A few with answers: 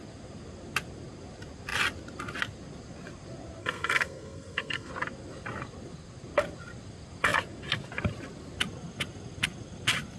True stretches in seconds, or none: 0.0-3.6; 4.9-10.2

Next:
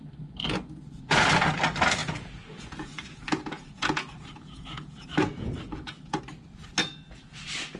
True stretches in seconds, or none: 0.0-2.0; 6.2-6.8; 7.3-7.8

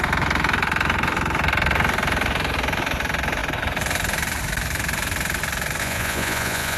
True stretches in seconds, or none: 0.0-5.8

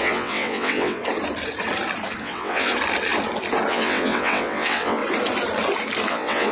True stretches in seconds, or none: 1.0-2.2; 2.7-3.7; 5.0-6.1

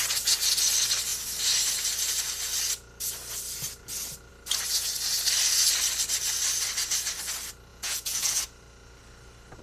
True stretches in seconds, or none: 0.0-7.7; 8.4-9.6